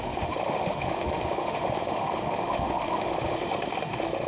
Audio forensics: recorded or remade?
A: remade